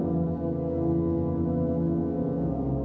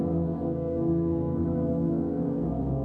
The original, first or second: first